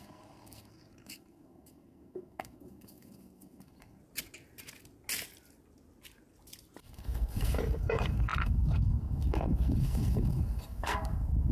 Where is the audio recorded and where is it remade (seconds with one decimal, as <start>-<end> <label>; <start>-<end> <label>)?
0.0-4.0 remade; 4.0-6.8 recorded; 6.8-11.5 remade